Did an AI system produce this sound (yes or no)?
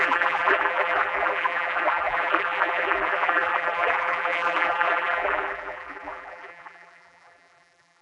yes